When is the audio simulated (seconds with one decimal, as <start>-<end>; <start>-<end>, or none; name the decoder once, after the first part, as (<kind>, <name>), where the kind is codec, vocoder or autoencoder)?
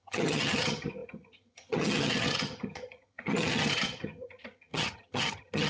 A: 0.0-5.7 (vocoder, HiFi-GAN)